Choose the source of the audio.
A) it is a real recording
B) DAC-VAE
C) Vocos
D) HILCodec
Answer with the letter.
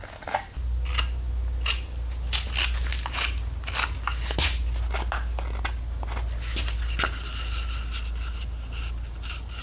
A